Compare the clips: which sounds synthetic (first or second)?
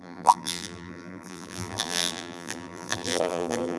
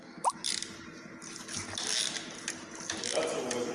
first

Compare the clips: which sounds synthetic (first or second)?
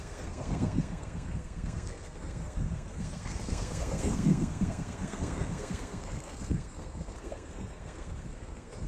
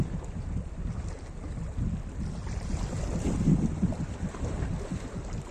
first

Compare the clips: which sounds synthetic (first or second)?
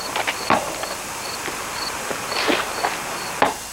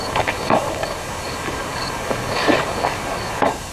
second